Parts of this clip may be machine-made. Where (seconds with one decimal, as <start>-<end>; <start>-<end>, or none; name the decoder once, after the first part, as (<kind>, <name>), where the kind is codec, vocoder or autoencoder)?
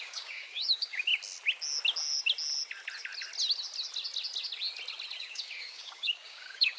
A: 0.0-1.1 (codec, DAC); 5.2-6.8